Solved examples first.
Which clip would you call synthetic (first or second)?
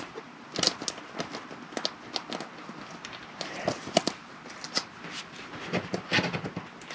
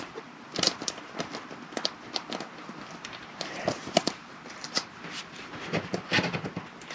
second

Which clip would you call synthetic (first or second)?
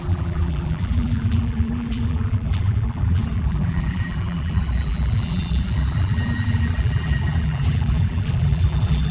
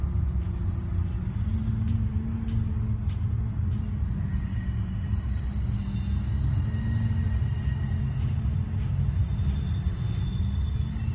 first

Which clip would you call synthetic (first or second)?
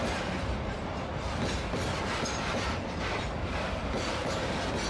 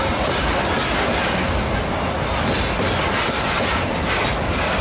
first